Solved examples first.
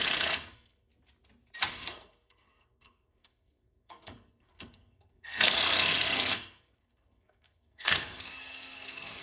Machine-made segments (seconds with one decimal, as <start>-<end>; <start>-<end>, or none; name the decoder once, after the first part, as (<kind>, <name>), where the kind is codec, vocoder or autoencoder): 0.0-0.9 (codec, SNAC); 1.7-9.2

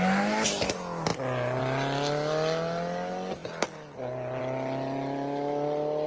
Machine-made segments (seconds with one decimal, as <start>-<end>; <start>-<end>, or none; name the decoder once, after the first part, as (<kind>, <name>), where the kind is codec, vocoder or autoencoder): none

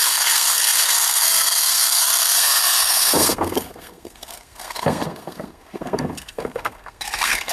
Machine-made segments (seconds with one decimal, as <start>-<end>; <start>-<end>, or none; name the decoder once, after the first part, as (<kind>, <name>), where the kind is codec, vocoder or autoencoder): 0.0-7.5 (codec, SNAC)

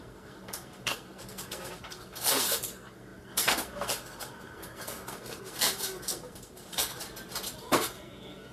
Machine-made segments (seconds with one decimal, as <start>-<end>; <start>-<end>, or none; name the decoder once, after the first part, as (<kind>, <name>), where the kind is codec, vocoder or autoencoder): 0.0-7.0 (codec, SNAC); 7.6-8.5

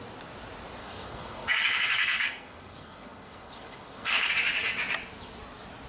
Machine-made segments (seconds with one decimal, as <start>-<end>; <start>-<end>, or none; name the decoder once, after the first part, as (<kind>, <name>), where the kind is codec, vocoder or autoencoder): 0.8-4.3 (codec, SNAC)

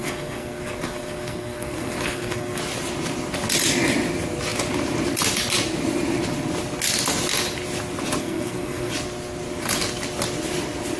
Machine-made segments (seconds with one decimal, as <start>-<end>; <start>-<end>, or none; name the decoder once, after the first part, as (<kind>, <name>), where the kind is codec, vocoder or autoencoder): 0.0-2.6 (codec, SNAC); 8.2-8.9